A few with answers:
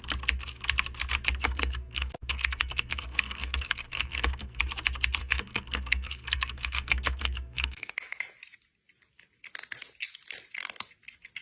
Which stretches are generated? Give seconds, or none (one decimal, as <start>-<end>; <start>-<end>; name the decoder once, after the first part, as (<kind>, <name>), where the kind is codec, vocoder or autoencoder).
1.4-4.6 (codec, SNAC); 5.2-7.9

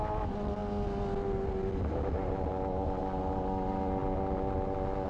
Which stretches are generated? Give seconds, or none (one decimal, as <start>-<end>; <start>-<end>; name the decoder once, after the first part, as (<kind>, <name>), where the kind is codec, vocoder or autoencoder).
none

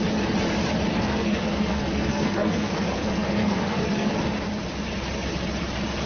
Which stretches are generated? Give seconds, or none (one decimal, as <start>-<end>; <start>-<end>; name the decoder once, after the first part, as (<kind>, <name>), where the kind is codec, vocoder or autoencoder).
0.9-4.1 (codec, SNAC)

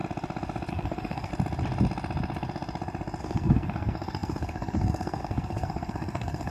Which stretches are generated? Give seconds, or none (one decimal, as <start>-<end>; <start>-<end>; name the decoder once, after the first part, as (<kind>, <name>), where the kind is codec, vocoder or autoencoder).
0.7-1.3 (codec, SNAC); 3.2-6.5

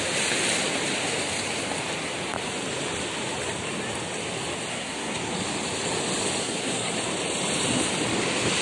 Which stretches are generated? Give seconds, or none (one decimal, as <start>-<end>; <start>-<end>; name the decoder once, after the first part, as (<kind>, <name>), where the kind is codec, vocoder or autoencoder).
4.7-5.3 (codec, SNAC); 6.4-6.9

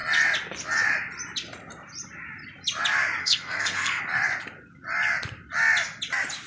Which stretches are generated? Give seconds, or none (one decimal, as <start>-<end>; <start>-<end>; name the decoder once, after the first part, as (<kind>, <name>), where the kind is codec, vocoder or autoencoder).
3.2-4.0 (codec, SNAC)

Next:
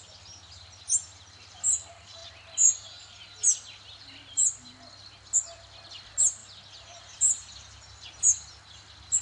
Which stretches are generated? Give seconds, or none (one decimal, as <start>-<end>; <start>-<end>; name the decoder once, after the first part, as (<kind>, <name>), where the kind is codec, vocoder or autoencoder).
none

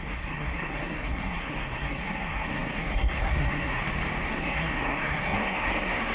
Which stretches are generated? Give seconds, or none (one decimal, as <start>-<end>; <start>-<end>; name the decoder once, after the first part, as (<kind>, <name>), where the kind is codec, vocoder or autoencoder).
0.0-3.8 (codec, SNAC); 4.3-6.1